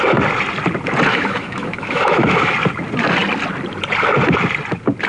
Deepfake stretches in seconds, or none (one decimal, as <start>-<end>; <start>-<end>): 1.1-2.5